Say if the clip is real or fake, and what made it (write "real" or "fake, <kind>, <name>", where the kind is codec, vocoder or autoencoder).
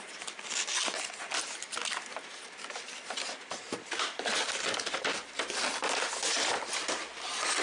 real